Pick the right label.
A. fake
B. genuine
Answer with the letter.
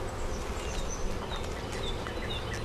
B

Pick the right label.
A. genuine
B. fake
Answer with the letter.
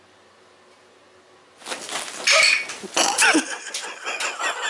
A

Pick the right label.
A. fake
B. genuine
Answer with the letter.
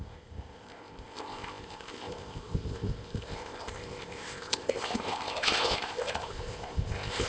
A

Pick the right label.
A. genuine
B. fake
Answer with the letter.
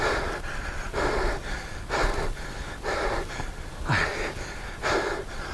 A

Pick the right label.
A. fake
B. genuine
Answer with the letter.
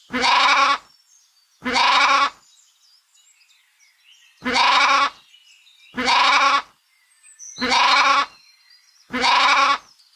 B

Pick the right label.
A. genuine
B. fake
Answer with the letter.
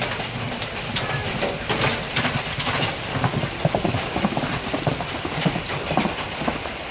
B